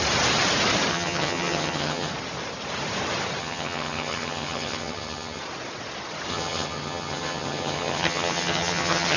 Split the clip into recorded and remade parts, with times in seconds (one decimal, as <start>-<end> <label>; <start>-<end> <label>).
0.0-0.9 recorded; 0.9-2.1 remade; 2.1-3.4 recorded; 3.4-5.4 remade; 5.4-6.3 recorded; 6.3-9.2 remade